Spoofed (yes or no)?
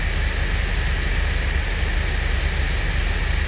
no